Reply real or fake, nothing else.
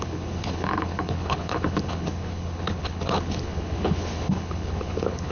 fake